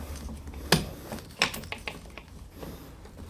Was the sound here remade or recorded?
recorded